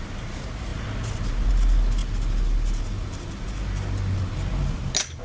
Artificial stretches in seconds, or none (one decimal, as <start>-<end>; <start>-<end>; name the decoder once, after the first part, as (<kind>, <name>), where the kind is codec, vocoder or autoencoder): none